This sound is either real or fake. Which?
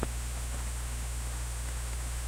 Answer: fake